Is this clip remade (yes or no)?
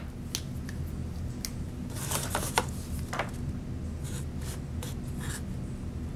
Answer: no